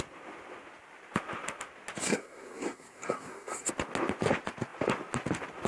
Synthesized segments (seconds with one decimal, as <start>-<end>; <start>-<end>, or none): 2.0-3.7